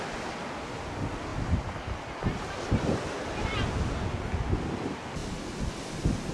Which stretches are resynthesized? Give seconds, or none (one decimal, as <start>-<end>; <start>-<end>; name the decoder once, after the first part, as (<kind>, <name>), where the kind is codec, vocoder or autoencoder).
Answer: none

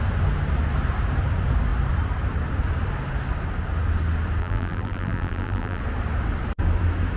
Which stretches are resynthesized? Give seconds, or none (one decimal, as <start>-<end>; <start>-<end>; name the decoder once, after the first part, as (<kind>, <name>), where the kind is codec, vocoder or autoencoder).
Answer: 4.4-5.8 (vocoder, BigVGAN v2)

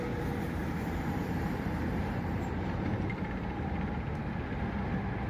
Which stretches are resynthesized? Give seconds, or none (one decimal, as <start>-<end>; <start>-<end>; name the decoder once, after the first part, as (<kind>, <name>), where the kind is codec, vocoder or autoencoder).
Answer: 0.6-3.8 (vocoder, BigVGAN v2)

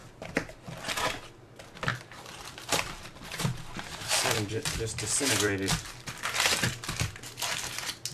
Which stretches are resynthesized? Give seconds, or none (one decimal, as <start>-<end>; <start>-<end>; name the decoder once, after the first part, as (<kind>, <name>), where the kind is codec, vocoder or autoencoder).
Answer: 1.9-6.1 (vocoder, BigVGAN v2)

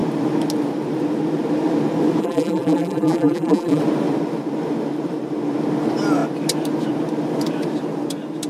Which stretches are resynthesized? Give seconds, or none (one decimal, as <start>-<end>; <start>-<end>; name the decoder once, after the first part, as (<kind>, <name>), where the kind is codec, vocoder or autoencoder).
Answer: 2.2-3.8 (vocoder, BigVGAN v2)